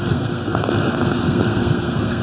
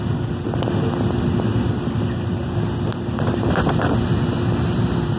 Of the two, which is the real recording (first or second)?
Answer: second